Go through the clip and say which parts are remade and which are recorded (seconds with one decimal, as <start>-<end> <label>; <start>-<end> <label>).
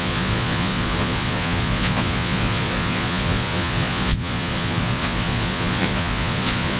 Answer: 0.0-6.8 remade